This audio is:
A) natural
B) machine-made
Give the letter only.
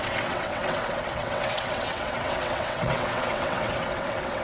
B